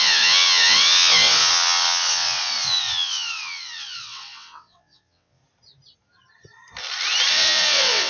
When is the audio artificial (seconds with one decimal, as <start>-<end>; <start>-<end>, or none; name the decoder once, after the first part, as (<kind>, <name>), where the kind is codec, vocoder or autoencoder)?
0.0-5.4 (vocoder, WaveNeXt); 7.3-8.1